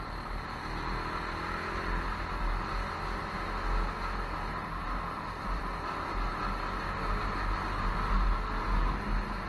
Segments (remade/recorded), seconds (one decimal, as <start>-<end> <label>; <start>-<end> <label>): 0.0-4.5 recorded; 4.5-5.6 remade; 5.6-9.5 recorded